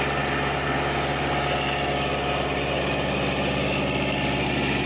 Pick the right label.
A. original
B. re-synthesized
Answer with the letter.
A